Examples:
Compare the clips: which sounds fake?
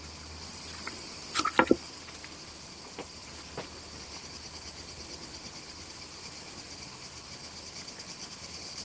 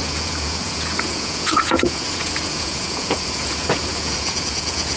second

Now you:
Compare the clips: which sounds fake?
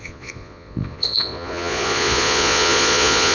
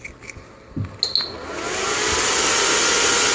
first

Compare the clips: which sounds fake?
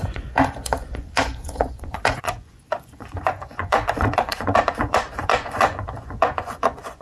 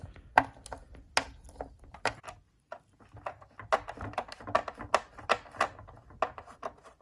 first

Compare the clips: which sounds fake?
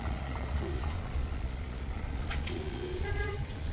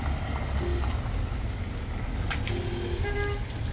first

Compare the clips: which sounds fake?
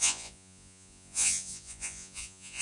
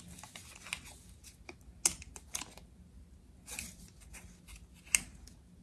first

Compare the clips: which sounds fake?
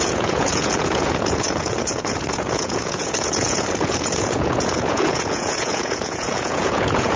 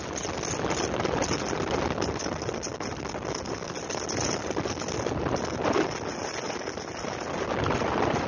first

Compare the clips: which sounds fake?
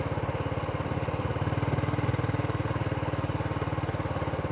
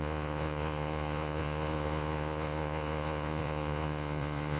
second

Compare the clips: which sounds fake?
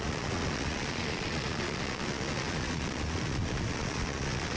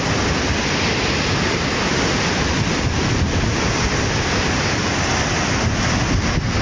first